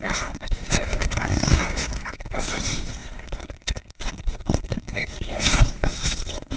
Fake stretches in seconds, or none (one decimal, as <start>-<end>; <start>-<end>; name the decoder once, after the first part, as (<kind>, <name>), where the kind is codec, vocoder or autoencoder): 0.0-6.6 (codec, SNAC)